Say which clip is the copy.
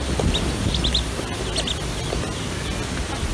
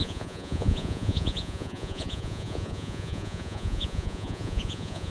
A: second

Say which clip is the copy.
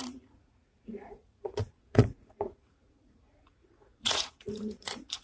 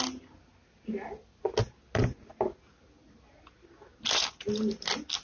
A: first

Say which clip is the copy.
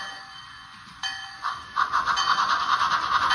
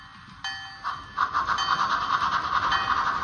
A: first